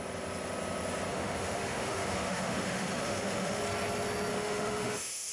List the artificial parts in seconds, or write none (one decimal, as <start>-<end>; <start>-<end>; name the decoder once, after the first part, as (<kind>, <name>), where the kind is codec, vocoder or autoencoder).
1.1-3.6 (autoencoder, DAC-VAE); 4.3-5.3